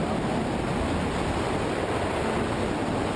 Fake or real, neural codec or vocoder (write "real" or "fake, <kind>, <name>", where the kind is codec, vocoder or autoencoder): real